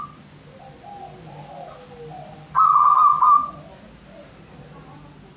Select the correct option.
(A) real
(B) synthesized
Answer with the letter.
A